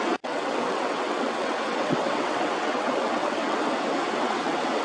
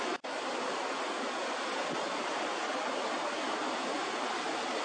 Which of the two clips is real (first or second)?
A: second